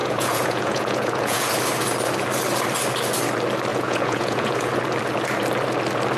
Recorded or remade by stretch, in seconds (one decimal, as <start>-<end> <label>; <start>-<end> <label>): 0.0-1.5 remade; 1.5-3.7 recorded; 3.7-4.7 remade; 4.7-6.2 recorded